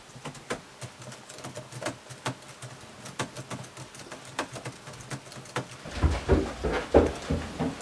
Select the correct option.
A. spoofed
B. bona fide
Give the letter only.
B